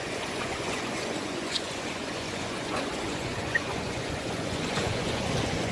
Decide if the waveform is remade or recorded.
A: remade